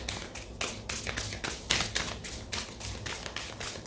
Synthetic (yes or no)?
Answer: no